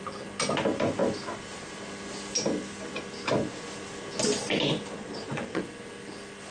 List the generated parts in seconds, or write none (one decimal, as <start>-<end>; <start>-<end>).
4.9-5.6